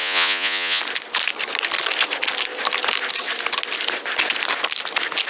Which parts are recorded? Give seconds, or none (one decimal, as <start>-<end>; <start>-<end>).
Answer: 0.8-5.3